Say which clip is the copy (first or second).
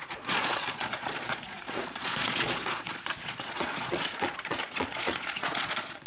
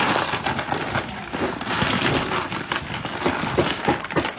first